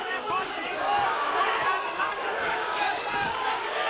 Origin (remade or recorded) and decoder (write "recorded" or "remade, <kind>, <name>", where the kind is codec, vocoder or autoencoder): remade, codec, DAC